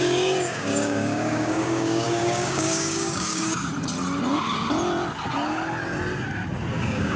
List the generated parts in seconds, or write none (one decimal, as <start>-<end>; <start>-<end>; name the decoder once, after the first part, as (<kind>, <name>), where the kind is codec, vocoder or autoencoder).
0.0-3.7 (codec, DAC); 6.8-7.2